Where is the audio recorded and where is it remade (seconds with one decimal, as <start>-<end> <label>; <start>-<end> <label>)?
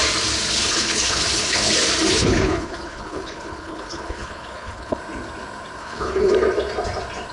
0.0-0.6 recorded; 0.6-1.7 remade; 1.7-2.1 recorded; 2.1-5.0 remade; 5.0-5.8 recorded; 5.8-6.3 remade; 6.3-7.3 recorded